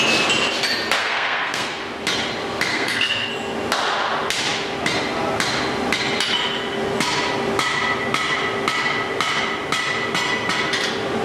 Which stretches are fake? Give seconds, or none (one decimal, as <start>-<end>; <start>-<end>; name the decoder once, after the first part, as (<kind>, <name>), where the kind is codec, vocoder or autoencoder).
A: 1.0-1.8 (codec, SNAC); 2.7-3.3